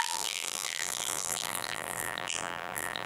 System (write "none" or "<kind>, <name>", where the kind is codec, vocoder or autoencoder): vocoder, BigVGAN v2